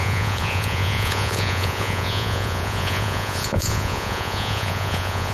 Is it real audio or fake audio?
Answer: fake